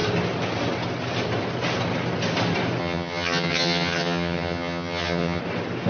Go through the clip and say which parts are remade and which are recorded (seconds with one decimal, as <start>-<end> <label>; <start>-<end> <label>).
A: 0.0-2.8 recorded; 2.8-5.4 remade; 5.4-5.9 recorded